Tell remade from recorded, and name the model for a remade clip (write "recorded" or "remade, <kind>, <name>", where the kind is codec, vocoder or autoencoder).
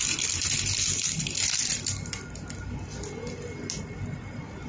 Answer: recorded